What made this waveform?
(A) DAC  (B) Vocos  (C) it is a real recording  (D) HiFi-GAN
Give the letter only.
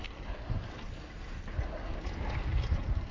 C